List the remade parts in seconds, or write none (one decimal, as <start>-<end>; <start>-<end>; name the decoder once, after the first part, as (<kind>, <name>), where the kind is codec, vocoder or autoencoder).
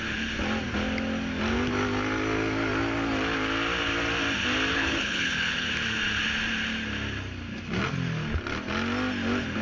4.7-5.7 (codec, HILCodec)